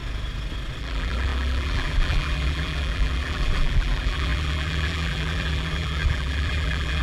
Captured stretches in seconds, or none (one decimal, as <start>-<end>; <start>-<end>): 0.0-0.8